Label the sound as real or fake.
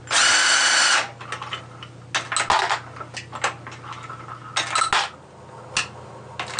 real